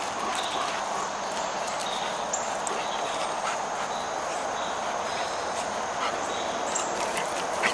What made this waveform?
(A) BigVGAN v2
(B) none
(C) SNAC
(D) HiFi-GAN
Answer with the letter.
B